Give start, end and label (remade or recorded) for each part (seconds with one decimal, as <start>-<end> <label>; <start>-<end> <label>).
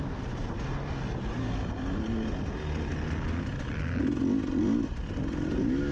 0.0-5.9 recorded